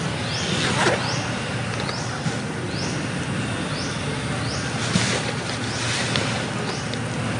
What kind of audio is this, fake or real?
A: real